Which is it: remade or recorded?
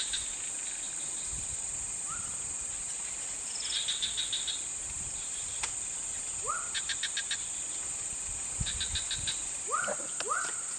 recorded